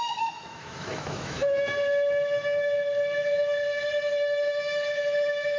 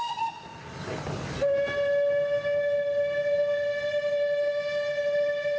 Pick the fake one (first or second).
first